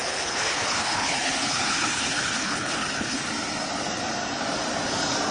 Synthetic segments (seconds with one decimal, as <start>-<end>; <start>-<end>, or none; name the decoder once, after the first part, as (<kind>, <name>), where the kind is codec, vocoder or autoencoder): 0.0-3.2 (codec, HILCodec)